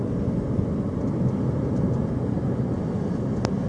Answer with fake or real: real